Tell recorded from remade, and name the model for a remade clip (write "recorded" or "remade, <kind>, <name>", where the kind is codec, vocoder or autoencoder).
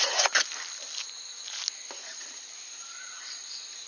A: recorded